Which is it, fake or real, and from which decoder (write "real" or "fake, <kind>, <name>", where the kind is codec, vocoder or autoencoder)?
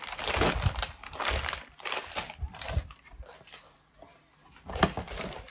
fake, vocoder, BigVGAN v2